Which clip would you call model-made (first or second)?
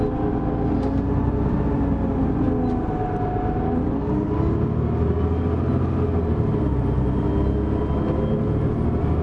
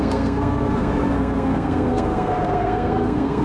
second